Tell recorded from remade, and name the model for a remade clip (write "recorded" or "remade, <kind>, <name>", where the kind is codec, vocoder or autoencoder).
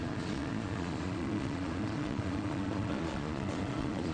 remade, vocoder, Vocos